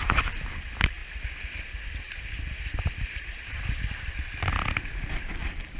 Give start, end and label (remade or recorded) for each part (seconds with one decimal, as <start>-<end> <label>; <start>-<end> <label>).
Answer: 0.0-5.8 remade